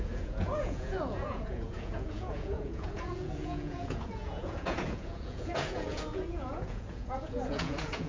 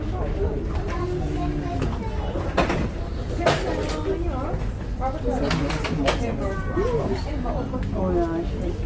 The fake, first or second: first